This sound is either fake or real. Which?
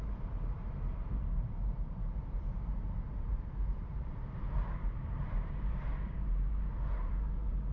fake